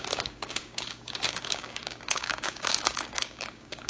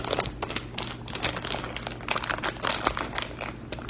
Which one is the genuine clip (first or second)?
second